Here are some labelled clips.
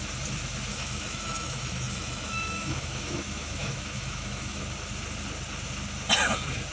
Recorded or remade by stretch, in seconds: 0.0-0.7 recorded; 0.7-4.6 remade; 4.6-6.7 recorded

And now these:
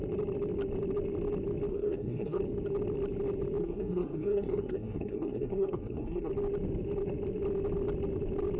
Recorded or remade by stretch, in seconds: 0.0-1.7 recorded; 1.7-2.4 remade; 2.4-3.6 recorded; 3.6-6.3 remade; 6.3-8.6 recorded

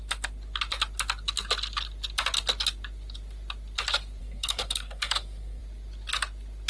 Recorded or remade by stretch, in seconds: 0.0-4.2 recorded; 4.2-5.6 remade; 5.6-6.7 recorded

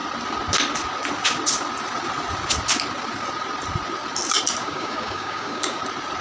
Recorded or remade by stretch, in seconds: 0.0-4.6 recorded; 4.6-5.8 remade; 5.8-6.2 recorded

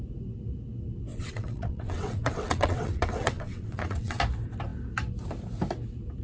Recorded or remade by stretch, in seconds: 0.0-1.1 recorded; 1.1-4.2 remade; 4.2-6.2 recorded

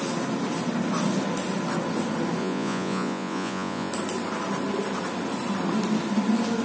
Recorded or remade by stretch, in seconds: 0.0-2.4 recorded; 2.4-3.9 remade; 3.9-6.6 recorded

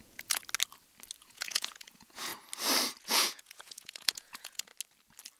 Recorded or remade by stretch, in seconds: 0.0-0.4 remade; 0.4-1.2 recorded; 1.2-2.3 remade; 2.3-3.0 recorded; 3.0-4.7 remade; 4.7-5.4 recorded

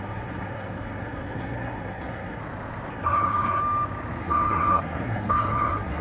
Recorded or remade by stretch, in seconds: 0.0-2.4 remade; 2.4-2.9 recorded; 2.9-3.6 remade; 3.6-4.2 recorded; 4.2-6.0 remade